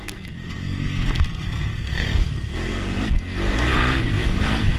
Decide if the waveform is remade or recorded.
remade